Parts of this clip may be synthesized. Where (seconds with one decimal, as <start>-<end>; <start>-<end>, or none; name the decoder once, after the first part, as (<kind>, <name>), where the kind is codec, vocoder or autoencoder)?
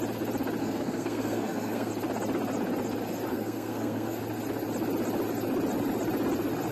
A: 0.6-1.9 (codec, SNAC); 3.3-4.2